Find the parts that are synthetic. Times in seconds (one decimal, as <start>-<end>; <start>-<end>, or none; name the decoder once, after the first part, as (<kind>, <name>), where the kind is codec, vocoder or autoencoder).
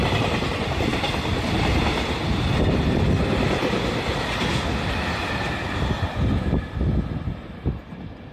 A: none